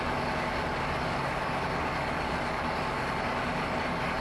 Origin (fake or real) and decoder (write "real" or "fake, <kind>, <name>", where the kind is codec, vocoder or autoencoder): fake, codec, DAC